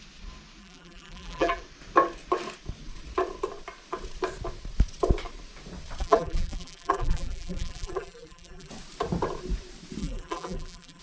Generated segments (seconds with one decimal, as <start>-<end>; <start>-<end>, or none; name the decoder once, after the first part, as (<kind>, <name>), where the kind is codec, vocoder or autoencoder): 0.6-1.6 (vocoder, BigVGAN v2); 6.0-8.7; 10.0-11.0